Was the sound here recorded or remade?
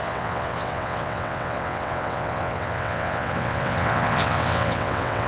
remade